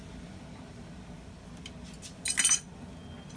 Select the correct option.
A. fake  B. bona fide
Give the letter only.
B